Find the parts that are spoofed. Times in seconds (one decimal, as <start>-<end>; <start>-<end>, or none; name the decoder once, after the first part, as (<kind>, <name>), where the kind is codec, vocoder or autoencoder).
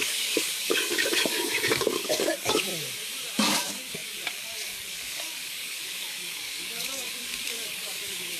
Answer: 0.0-2.7 (codec, DAC); 3.3-8.4